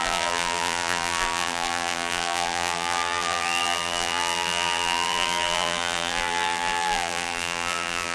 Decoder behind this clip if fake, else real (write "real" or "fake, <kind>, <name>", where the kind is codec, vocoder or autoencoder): fake, vocoder, BigVGAN v2